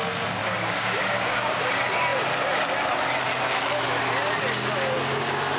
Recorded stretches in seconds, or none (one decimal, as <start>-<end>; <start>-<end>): 0.0-0.4; 1.6-5.6